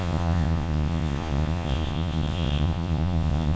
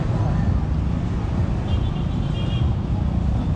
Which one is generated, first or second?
first